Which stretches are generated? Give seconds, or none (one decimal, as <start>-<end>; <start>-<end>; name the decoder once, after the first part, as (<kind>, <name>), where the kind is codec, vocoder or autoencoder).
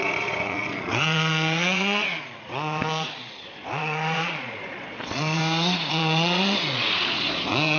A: 0.0-5.4 (vocoder, Vocos); 5.9-7.8